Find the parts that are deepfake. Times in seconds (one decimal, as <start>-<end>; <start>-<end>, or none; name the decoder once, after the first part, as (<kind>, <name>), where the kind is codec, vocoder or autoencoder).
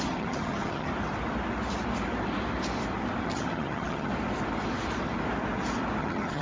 0.0-0.9 (vocoder, HiFi-GAN); 3.2-4.1; 6.0-6.4